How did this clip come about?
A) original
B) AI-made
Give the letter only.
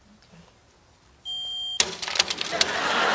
A